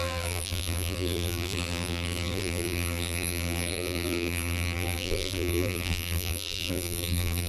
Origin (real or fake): fake